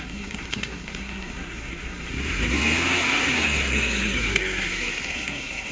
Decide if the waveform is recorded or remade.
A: remade